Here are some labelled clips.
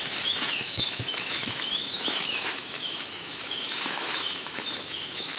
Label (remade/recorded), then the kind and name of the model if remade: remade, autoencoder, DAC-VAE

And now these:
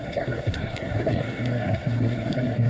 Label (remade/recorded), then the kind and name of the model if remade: remade, codec, SNAC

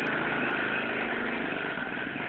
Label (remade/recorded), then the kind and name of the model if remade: recorded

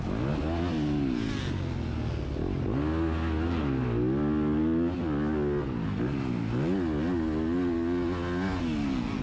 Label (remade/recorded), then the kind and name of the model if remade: recorded